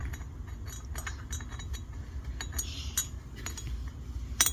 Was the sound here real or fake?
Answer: real